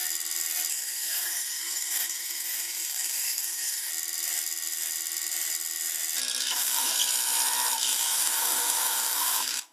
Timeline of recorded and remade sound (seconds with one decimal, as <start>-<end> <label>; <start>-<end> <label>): 0.0-0.7 recorded; 0.7-3.9 remade; 3.9-6.4 recorded; 6.4-6.9 remade; 6.9-7.8 recorded; 7.8-9.7 remade